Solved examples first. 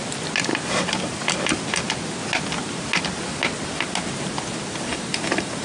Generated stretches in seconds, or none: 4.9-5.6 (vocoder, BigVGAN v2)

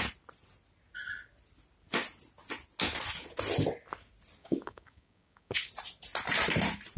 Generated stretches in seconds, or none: 4.4-5.7 (codec, DAC)

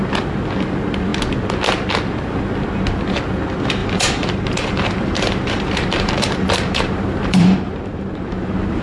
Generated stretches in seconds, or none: 3.8-8.8 (vocoder, BigVGAN v2)

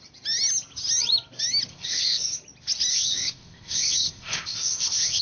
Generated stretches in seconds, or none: 1.7-2.4 (codec, ZipCodec); 2.9-5.2

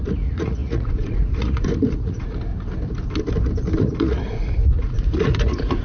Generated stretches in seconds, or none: 0.0-2.5 (vocoder, Vocos); 3.8-5.8

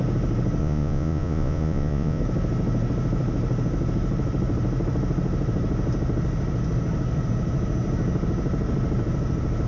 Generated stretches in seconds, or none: 0.6-2.2 (vocoder, Vocos)

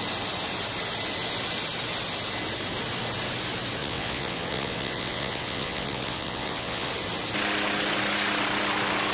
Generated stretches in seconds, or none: 3.8-6.9 (vocoder, WaveNeXt)

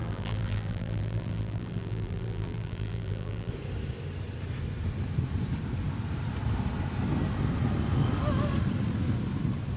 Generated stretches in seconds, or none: 0.0-3.5 (vocoder, BigVGAN v2)